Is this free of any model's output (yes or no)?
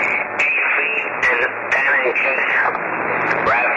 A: yes